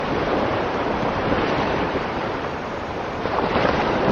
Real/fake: fake